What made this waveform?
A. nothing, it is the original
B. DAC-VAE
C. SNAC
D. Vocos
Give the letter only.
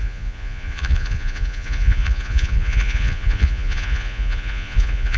D